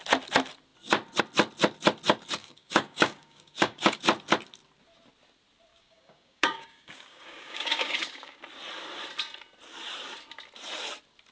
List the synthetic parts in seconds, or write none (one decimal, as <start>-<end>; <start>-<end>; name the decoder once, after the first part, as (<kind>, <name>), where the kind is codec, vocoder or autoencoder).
2.4-4.0 (codec, DAC); 5.7-8.4